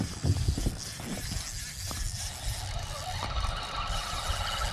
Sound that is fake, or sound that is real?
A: real